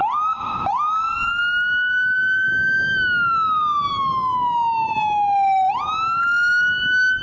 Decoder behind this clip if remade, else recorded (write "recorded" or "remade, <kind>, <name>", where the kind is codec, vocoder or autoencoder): recorded